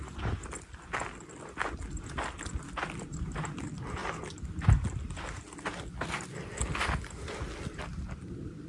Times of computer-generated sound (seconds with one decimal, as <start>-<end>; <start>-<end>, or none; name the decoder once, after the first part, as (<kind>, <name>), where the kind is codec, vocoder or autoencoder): none